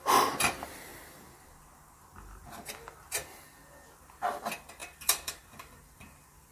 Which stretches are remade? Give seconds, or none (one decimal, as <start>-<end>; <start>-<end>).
0.0-0.9; 3.9-6.5